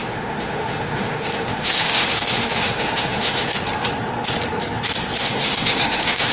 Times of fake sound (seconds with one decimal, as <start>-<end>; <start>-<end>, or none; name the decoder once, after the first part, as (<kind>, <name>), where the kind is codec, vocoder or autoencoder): 0.0-3.5 (autoencoder, DAC-VAE); 5.2-6.3